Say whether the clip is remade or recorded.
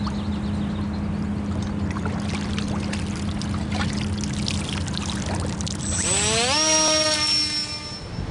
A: recorded